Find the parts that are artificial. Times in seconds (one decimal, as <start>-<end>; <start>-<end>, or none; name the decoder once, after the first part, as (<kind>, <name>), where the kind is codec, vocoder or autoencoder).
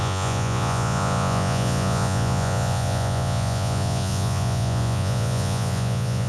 0.0-6.3 (vocoder, Vocos)